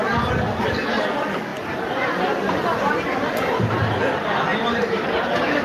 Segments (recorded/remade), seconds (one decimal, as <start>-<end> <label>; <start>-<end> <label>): 0.0-4.5 recorded; 4.5-5.6 remade